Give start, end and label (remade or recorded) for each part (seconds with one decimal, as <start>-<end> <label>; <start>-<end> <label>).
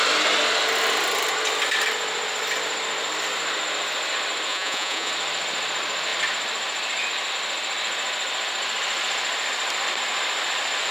0.0-4.5 recorded; 4.5-5.1 remade; 5.1-10.9 recorded